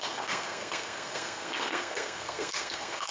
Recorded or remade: remade